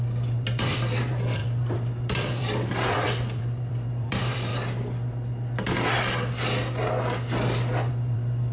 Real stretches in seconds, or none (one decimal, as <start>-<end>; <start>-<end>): 4.5-7.9